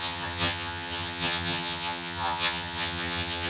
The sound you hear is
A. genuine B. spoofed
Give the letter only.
B